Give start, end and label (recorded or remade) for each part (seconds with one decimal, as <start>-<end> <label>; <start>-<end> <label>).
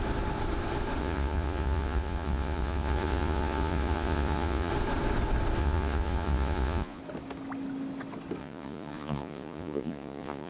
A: 0.0-1.0 recorded; 1.0-4.7 remade; 4.7-5.6 recorded; 5.6-7.0 remade; 7.0-8.4 recorded; 8.4-10.5 remade